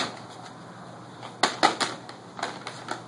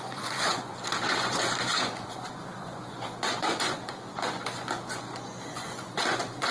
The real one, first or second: first